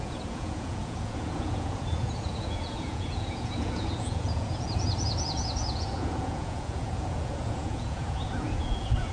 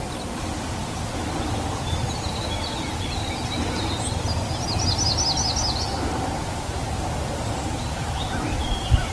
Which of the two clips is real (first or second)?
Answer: second